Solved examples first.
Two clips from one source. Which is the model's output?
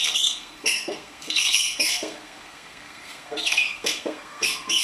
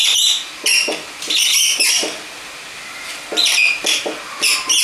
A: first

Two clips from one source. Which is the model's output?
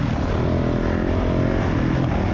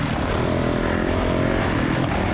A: second